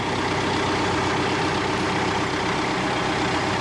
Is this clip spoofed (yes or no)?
no